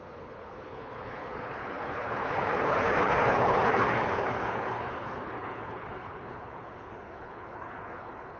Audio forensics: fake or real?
fake